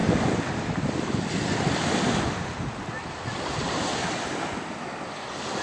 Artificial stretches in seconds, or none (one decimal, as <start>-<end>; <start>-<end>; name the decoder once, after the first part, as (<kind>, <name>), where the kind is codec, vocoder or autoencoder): none

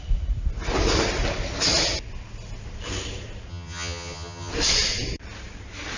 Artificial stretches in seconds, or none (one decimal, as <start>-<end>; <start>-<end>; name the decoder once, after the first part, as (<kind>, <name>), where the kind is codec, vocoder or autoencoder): 3.5-4.5 (vocoder, HiFi-GAN)

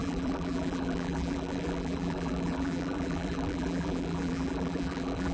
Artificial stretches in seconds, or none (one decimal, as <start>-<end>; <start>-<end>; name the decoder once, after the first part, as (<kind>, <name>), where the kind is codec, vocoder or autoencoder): 0.0-5.3 (vocoder, BigVGAN v2)